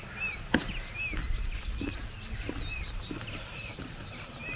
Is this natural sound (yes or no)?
yes